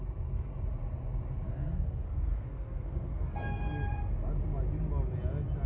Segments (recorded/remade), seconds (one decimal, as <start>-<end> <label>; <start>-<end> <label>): 0.0-1.5 recorded; 1.5-3.7 remade; 3.7-5.7 recorded